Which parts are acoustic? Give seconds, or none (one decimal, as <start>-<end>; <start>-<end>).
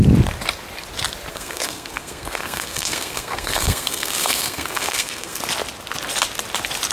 0.0-1.3; 5.4-6.9